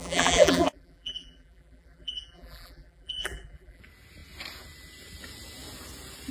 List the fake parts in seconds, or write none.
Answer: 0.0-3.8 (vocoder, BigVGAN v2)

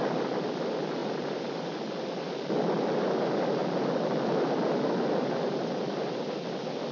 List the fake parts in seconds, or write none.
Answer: 1.0-2.5 (vocoder, BigVGAN v2)

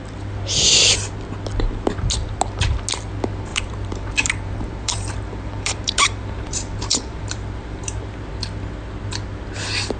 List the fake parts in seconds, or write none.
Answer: 3.5-8.3 (vocoder, BigVGAN v2)

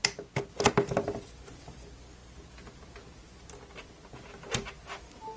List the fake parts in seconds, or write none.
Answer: none

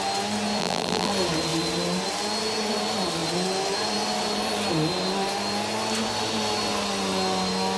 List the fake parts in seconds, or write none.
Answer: 0.6-1.1 (vocoder, BigVGAN v2)

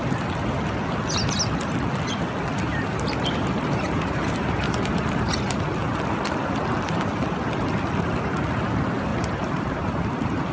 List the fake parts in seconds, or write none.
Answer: 2.7-5.9 (vocoder, BigVGAN v2); 9.1-10.5